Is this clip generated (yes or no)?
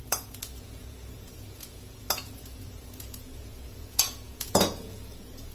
yes